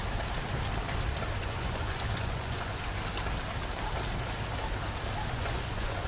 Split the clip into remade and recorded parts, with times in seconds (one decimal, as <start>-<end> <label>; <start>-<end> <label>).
0.0-1.4 recorded; 1.4-2.8 remade; 2.8-5.3 recorded; 5.3-6.1 remade